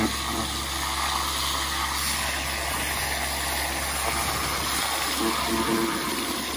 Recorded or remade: recorded